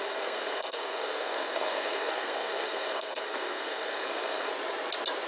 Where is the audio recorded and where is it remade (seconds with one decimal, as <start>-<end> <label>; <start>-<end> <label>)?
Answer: 0.0-4.5 remade; 4.5-5.3 recorded